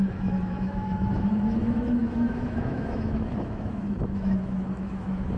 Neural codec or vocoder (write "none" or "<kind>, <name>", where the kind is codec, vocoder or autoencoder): autoencoder, DAC-VAE